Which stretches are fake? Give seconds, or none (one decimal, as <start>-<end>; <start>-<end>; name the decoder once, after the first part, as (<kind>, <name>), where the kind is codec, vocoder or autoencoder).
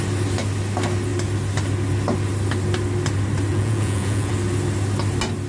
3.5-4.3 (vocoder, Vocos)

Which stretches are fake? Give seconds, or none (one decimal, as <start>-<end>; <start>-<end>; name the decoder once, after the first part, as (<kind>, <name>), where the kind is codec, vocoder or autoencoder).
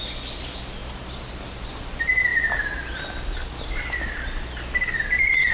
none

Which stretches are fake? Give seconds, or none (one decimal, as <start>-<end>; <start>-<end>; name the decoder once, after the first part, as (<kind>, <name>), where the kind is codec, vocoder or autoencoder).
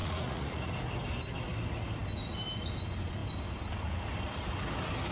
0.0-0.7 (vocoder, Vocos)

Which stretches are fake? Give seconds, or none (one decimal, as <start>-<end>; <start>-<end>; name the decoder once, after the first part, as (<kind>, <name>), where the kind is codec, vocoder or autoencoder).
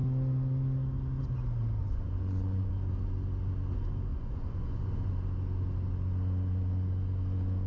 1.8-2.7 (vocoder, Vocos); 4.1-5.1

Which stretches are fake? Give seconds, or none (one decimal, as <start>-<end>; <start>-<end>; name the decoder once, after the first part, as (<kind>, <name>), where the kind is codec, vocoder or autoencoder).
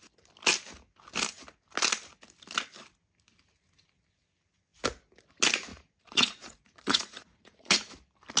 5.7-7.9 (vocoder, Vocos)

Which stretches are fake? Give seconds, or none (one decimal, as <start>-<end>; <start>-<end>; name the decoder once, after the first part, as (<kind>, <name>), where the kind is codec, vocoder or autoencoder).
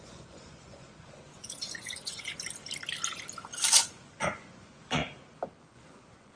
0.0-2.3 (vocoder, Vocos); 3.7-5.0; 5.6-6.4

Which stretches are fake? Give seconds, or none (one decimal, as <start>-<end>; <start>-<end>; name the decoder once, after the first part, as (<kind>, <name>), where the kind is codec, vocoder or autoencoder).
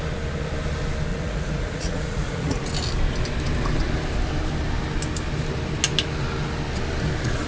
1.1-2.6 (vocoder, Vocos)